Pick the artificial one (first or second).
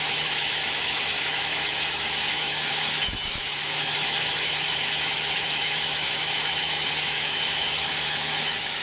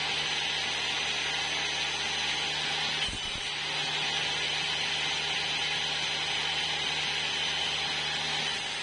first